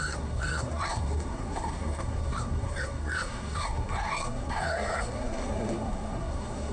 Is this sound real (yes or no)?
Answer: no